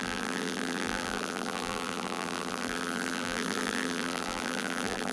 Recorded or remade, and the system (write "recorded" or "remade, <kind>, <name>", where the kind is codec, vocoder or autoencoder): remade, vocoder, BigVGAN v2